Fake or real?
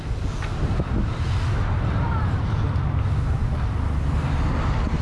real